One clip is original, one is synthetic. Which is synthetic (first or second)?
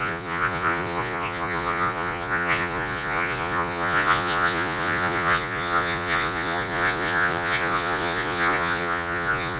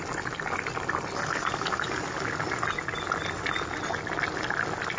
first